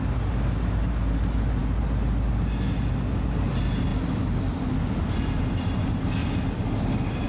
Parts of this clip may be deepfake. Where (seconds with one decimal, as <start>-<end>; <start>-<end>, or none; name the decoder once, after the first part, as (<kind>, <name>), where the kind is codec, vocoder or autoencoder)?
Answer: 3.9-5.5 (vocoder, BigVGAN v2); 6.2-7.3